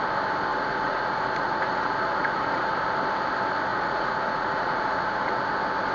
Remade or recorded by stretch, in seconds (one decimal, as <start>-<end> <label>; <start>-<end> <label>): 0.0-0.5 recorded; 0.5-2.7 remade; 2.7-3.7 recorded; 3.7-5.4 remade; 5.4-5.9 recorded